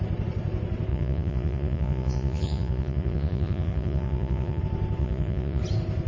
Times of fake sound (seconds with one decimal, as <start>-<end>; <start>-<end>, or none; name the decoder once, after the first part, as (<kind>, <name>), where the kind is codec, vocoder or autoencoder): 0.9-4.6 (vocoder, Vocos); 5.0-5.6